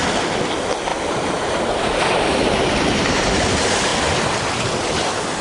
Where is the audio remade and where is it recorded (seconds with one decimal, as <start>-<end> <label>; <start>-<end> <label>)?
0.0-0.9 recorded; 0.9-3.2 remade; 3.2-5.4 recorded